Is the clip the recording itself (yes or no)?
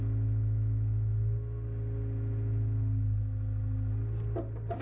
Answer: yes